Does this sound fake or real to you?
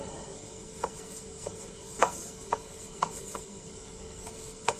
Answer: fake